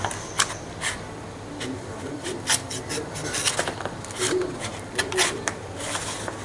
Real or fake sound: real